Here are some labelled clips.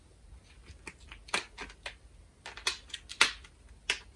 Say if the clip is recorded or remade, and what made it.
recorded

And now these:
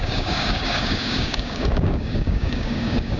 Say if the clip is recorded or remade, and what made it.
remade, codec, DAC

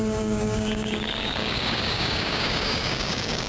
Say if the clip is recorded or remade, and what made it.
remade, codec, DAC